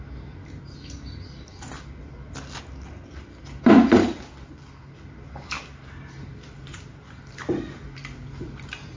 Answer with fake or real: real